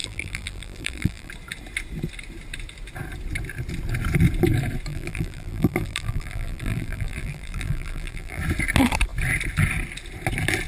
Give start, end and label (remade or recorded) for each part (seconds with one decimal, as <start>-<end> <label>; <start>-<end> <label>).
0.0-1.3 remade; 1.3-4.9 recorded; 4.9-8.4 remade; 8.4-10.7 recorded